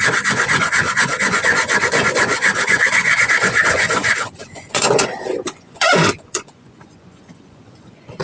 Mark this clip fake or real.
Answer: fake